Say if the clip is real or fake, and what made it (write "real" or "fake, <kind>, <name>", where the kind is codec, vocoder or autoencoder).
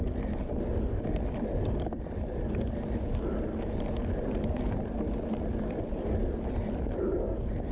real